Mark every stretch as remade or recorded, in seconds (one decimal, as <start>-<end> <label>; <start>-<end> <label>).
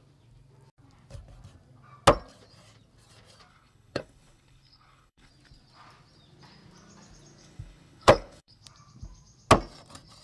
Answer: 0.0-3.5 recorded; 3.5-5.3 remade; 5.3-7.4 recorded; 7.4-8.6 remade; 8.6-10.2 recorded